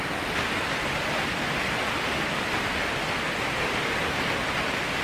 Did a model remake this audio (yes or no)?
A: no